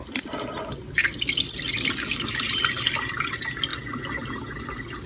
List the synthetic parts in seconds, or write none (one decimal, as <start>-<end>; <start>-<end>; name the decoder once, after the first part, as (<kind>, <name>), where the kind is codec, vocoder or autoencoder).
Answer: none